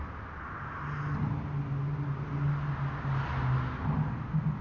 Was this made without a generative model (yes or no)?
yes